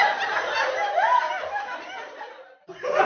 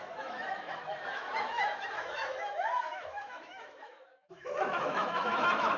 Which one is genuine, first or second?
first